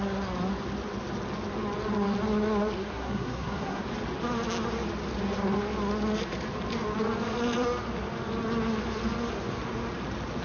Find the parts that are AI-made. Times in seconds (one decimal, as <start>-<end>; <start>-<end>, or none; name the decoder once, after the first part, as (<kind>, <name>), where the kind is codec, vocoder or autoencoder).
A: 2.8-3.8 (codec, SNAC)